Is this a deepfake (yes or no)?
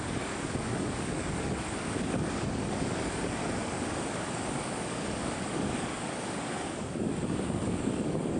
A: yes